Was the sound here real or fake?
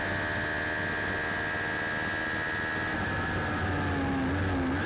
real